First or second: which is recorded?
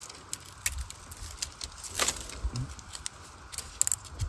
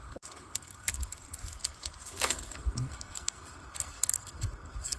first